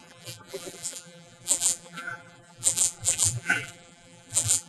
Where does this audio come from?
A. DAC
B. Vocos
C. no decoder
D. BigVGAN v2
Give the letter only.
D